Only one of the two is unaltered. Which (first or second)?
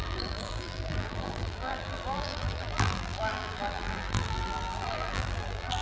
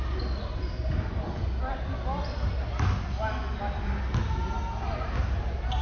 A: second